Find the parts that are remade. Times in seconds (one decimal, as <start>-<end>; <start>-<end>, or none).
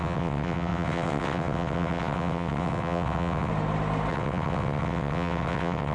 0.0-3.5; 4.1-5.9